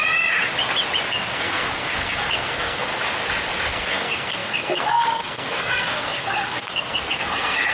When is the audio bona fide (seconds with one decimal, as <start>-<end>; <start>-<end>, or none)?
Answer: 0.0-1.1; 2.9-3.7